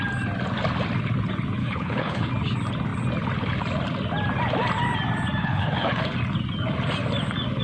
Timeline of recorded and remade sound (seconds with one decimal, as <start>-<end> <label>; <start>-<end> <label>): 0.0-1.6 recorded; 1.6-2.3 remade; 2.3-5.4 recorded; 5.4-6.0 remade; 6.0-7.6 recorded